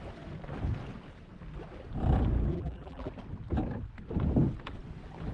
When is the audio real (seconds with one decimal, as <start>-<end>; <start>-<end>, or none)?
0.0-2.5; 3.1-5.3